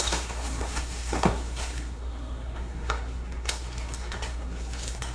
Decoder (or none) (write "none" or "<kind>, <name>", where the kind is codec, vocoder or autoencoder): codec, SNAC